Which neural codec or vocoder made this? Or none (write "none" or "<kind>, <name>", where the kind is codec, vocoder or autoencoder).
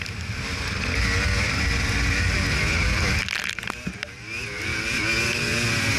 none